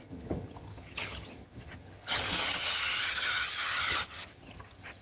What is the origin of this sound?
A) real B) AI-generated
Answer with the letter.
B